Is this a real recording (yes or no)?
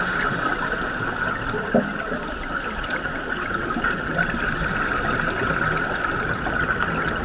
yes